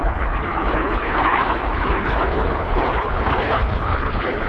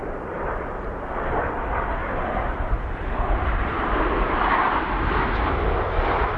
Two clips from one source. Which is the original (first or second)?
second